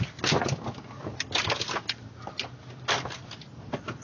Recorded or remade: recorded